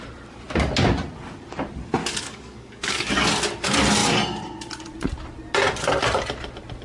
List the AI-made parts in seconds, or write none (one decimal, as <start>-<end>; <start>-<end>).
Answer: 2.0-3.1